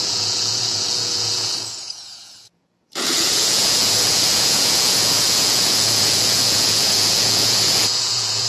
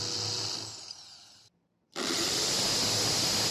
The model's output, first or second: first